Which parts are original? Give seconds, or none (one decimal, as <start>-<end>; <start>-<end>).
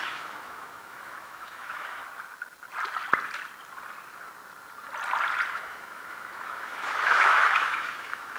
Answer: 2.0-5.5